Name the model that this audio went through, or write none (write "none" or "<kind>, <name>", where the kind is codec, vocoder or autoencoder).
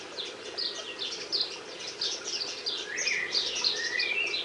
none